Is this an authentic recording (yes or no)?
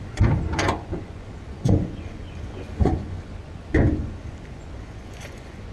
no